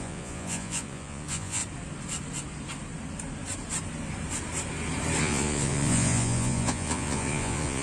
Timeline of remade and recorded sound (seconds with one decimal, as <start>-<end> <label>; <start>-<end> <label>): 0.0-1.6 remade; 1.6-5.2 recorded; 5.2-7.8 remade